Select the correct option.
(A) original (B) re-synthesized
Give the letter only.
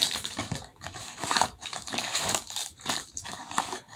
B